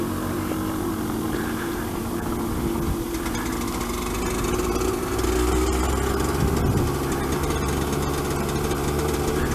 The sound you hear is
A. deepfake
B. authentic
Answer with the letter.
B